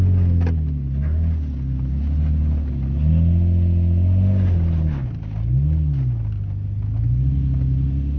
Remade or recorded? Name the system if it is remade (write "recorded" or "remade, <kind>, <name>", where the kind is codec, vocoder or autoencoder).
recorded